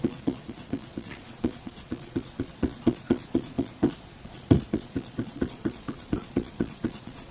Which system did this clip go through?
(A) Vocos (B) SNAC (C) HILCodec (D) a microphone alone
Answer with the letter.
A